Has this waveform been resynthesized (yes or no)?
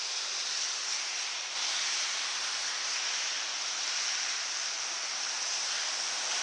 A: no